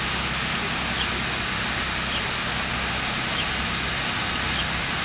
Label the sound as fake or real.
real